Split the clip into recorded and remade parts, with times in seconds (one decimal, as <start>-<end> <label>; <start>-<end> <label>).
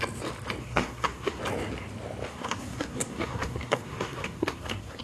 0.0-0.6 recorded; 0.6-1.4 remade; 1.4-2.3 recorded; 2.3-5.0 remade